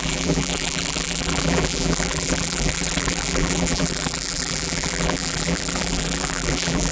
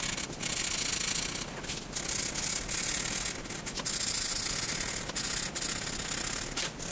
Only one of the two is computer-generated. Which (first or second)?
first